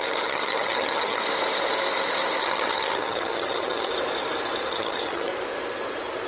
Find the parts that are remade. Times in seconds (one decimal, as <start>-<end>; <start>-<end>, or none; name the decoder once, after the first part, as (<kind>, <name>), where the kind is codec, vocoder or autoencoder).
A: 0.0-1.2 (vocoder, HiFi-GAN); 2.4-3.9; 4.7-5.3